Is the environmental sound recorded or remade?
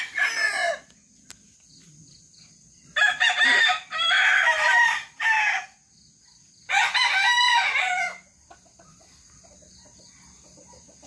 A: recorded